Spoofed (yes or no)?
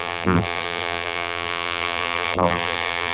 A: yes